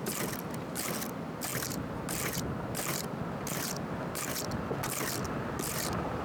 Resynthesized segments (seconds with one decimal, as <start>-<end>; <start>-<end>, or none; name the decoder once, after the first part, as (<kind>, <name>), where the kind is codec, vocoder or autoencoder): none